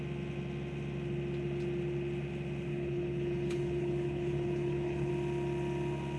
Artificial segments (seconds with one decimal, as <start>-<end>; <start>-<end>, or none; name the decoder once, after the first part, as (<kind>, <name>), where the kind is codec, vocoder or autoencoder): 2.7-5.1 (codec, HILCodec)